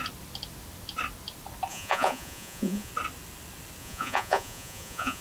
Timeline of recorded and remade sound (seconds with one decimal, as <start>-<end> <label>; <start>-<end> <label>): 0.0-1.7 recorded; 1.7-2.9 remade; 2.9-3.8 recorded; 3.8-5.2 remade